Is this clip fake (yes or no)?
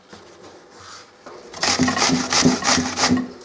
no